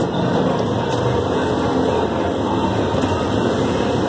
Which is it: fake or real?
real